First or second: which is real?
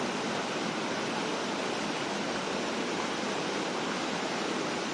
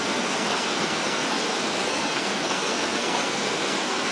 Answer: first